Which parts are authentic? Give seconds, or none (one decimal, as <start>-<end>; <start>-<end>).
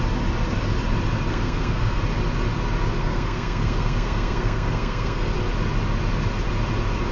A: 0.0-1.3; 2.0-3.0; 5.3-7.1